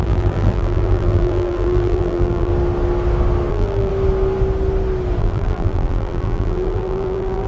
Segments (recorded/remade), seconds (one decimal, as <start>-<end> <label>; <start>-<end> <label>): 0.0-2.5 remade; 2.5-3.5 recorded; 3.5-3.9 remade; 3.9-5.2 recorded; 5.2-7.5 remade